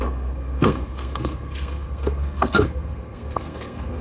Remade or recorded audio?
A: remade